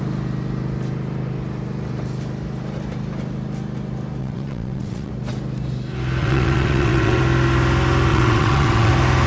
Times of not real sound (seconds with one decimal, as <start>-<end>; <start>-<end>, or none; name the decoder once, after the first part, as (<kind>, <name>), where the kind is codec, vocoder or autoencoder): 4.2-5.1 (vocoder, WaveNeXt); 6.2-7.2; 8.1-8.9